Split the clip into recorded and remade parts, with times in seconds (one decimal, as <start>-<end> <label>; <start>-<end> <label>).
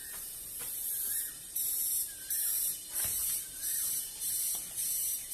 0.0-5.3 remade